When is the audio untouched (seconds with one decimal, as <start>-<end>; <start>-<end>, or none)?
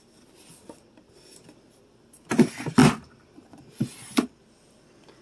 0.0-5.2